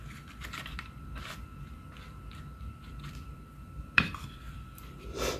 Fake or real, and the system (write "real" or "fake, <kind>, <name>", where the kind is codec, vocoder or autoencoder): fake, vocoder, BigVGAN v2